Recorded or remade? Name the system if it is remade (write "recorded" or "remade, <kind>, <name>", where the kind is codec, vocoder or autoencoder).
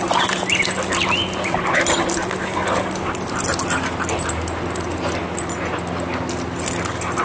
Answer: recorded